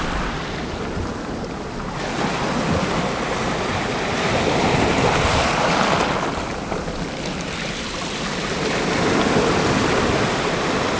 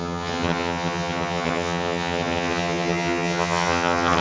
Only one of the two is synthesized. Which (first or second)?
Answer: second